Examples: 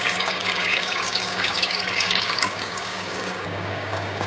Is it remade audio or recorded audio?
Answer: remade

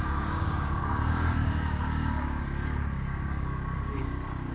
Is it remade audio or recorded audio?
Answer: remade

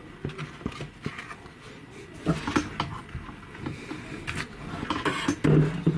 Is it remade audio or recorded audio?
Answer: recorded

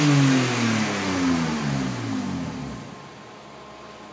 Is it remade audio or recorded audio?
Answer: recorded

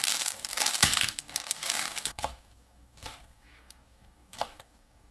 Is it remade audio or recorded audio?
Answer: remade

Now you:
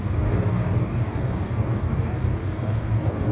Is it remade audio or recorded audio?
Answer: remade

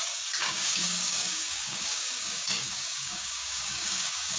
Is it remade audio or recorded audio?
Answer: remade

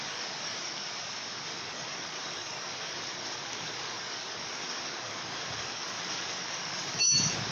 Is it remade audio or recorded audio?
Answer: remade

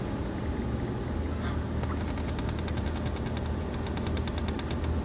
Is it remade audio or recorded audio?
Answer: recorded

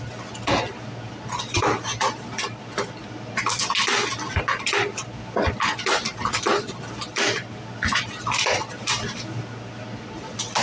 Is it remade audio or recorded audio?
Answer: recorded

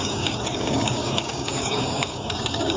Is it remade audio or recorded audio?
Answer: remade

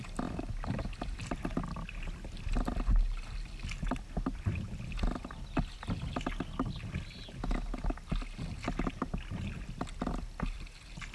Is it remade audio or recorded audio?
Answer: recorded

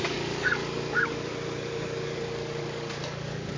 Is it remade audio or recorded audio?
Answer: remade